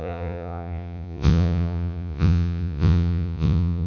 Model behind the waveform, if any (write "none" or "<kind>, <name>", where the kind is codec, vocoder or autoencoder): vocoder, Vocos